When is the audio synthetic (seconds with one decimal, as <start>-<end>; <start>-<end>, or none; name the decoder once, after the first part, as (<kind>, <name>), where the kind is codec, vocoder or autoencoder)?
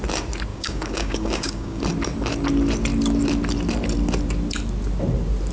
0.5-1.8 (codec, DAC)